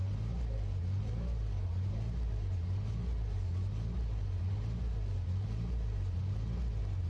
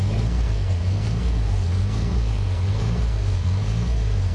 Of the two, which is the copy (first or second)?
second